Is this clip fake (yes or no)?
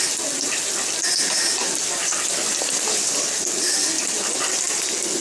no